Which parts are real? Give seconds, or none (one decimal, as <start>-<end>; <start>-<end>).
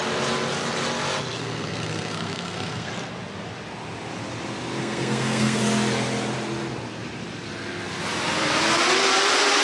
0.0-1.4; 2.9-4.8; 5.6-9.6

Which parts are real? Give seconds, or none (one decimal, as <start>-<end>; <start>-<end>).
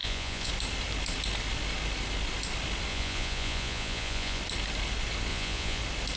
0.5-2.9; 4.4-5.3; 5.8-6.2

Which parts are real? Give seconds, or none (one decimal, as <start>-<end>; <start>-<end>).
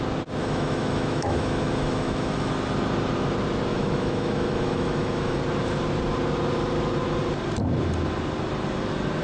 0.0-0.4; 2.5-3.7; 5.4-9.2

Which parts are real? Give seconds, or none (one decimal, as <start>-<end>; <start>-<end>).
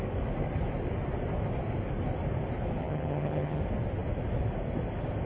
0.0-2.8; 3.6-5.3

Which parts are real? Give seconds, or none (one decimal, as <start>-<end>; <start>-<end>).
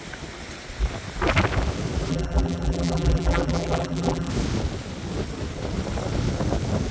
0.0-2.1; 4.3-6.9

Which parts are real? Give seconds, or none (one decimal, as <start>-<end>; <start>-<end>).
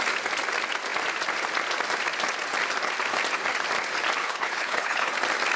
0.0-4.2; 5.1-5.6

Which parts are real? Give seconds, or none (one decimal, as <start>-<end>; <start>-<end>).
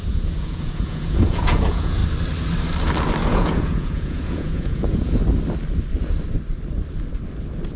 2.0-3.3; 5.2-7.8